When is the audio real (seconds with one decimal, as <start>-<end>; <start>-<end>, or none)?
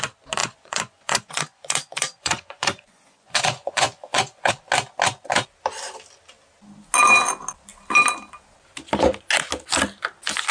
0.0-0.4; 4.5-10.5